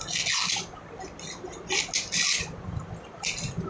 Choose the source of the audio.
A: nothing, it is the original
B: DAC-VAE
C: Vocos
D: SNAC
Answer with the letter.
A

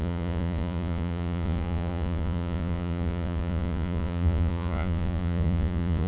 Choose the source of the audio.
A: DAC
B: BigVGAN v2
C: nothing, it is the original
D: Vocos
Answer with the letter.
D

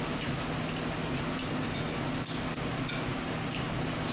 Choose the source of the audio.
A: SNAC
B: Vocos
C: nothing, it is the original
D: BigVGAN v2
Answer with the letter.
C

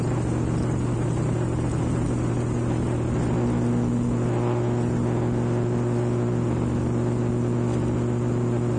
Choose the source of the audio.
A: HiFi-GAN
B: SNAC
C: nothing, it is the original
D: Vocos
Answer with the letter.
C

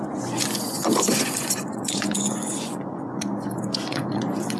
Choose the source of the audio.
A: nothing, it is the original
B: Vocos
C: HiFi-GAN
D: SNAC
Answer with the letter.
B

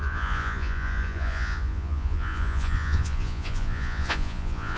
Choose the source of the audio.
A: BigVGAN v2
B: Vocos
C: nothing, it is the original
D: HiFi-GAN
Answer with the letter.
B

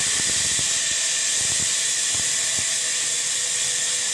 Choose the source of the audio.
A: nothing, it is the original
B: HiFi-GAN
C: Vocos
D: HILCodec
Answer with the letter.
A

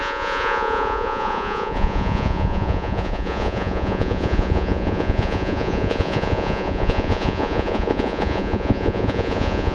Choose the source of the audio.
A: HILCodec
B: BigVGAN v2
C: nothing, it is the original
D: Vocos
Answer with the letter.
D